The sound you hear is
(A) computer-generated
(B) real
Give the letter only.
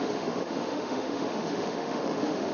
A